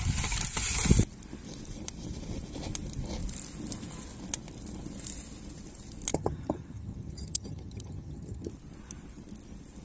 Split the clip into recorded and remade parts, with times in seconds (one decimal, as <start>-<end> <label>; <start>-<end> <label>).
0.0-6.1 recorded; 6.1-8.5 remade; 8.5-9.8 recorded